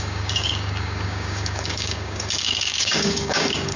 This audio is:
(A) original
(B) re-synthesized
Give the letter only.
B